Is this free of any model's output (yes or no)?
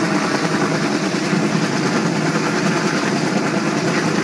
yes